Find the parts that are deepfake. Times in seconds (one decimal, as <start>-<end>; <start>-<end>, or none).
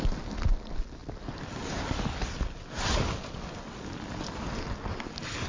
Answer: none